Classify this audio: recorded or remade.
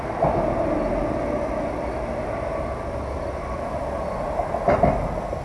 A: recorded